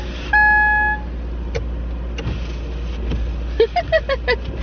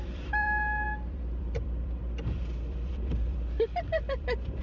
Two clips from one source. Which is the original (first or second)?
first